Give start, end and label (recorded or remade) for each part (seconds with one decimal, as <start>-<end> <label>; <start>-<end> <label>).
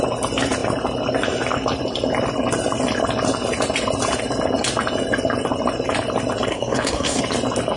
0.0-6.5 recorded; 6.5-7.2 remade; 7.2-7.8 recorded